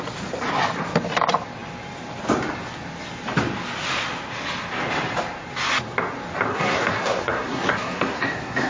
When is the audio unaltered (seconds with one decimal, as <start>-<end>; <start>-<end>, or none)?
0.0-6.5